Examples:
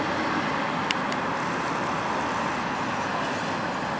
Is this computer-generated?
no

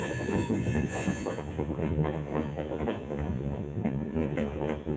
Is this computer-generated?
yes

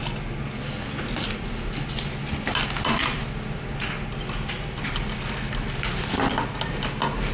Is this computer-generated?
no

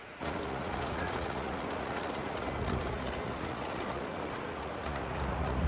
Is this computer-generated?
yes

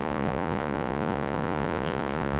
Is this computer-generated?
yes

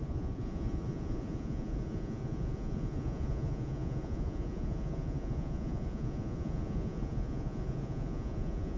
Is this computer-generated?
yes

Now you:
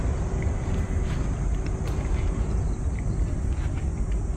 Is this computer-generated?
no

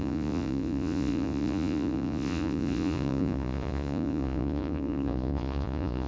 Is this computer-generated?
yes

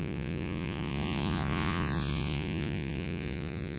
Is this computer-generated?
yes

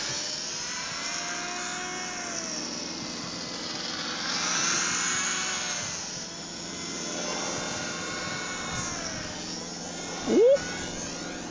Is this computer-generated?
no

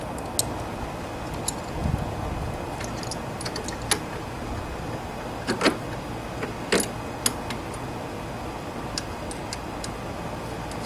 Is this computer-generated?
no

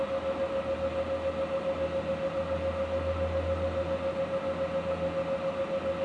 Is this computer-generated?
no